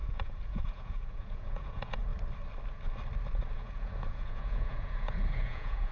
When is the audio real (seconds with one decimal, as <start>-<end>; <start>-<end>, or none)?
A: 2.1-3.5